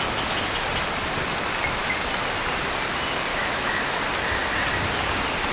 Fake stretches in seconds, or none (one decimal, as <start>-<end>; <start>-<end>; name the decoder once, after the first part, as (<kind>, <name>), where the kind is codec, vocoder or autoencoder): 3.3-4.0 (autoencoder, DAC-VAE)